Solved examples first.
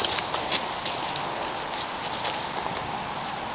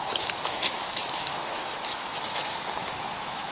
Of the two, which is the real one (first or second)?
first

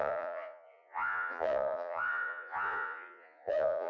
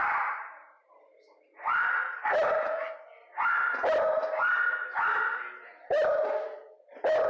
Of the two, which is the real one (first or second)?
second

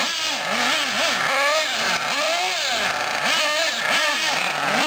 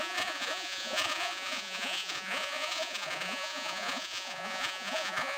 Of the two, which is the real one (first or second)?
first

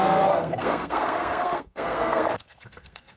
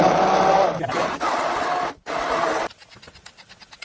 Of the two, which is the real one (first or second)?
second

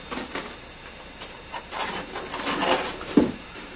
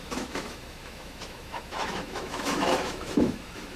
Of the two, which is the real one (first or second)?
first